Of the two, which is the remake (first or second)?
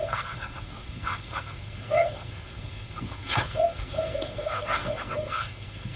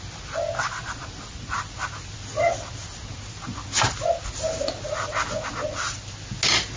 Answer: first